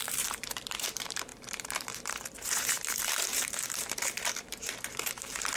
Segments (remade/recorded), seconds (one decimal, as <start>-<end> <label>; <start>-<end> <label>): 0.0-5.6 remade